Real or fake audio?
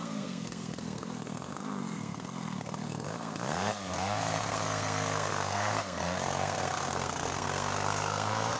fake